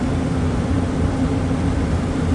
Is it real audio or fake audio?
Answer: fake